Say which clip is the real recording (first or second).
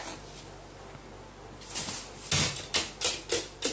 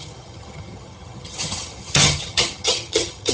first